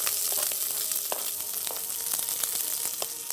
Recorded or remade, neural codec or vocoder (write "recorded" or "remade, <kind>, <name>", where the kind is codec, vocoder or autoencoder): recorded